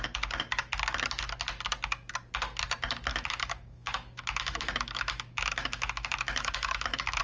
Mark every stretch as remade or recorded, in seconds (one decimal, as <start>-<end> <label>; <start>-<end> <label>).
0.0-3.1 recorded; 3.1-7.2 remade